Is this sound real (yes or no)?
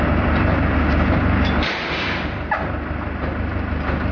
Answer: yes